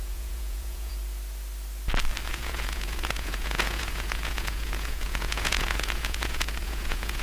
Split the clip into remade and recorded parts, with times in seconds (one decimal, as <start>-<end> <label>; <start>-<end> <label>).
0.0-0.9 remade; 0.9-2.3 recorded; 2.3-7.2 remade